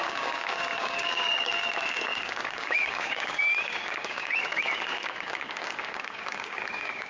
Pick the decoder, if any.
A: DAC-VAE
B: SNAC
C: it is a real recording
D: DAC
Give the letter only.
D